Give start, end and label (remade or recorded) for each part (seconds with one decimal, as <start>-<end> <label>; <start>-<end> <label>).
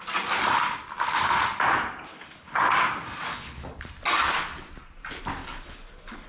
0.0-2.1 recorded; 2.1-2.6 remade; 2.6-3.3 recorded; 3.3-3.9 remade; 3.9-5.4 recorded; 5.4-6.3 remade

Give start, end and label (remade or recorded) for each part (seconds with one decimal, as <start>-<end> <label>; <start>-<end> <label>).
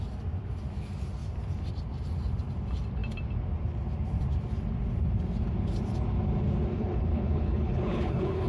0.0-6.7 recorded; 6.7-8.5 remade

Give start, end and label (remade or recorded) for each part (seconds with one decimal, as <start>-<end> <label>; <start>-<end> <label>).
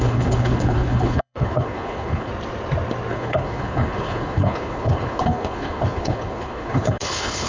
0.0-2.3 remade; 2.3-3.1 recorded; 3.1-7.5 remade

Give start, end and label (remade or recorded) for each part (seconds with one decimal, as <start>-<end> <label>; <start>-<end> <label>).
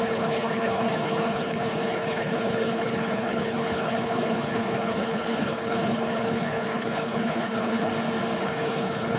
0.0-7.9 remade; 7.9-8.4 recorded; 8.4-9.2 remade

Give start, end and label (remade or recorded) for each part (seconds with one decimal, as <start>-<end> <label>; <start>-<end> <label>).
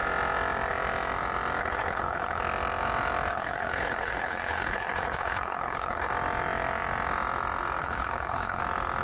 0.0-1.6 recorded; 1.6-2.4 remade; 2.4-3.3 recorded; 3.3-6.1 remade; 6.1-7.8 recorded; 7.8-8.6 remade; 8.6-9.0 recorded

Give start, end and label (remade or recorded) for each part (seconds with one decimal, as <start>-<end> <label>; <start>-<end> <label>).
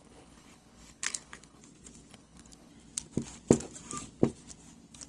0.0-1.6 remade; 1.6-2.1 recorded; 2.1-2.7 remade; 2.7-5.1 recorded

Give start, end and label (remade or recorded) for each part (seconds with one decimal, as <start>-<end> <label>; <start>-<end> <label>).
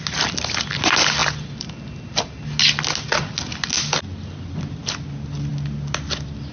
0.0-6.5 recorded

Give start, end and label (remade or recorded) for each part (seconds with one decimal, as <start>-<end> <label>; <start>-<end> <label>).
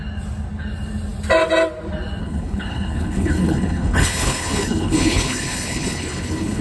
0.0-2.2 recorded; 2.2-6.6 remade